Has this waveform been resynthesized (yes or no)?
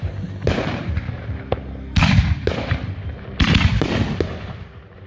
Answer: no